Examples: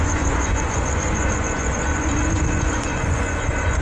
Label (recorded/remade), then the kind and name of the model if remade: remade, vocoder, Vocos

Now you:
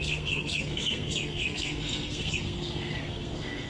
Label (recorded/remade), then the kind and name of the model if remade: remade, codec, SNAC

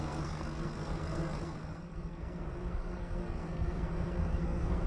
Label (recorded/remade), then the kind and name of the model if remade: remade, codec, SNAC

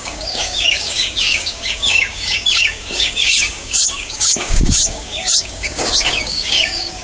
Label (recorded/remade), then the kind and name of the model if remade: remade, codec, DAC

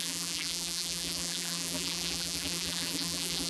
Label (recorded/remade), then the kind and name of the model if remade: remade, vocoder, BigVGAN v2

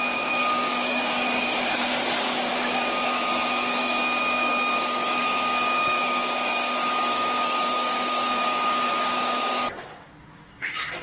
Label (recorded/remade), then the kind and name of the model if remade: remade, codec, DAC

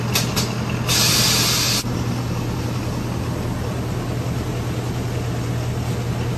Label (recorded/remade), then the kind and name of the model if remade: recorded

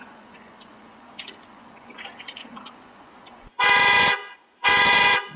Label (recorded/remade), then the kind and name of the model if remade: remade, vocoder, Vocos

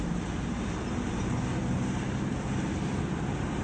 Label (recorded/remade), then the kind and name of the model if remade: remade, vocoder, BigVGAN v2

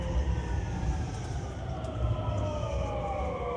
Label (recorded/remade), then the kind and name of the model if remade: recorded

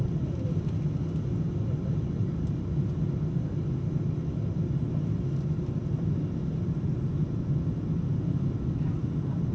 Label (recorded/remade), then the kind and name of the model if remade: recorded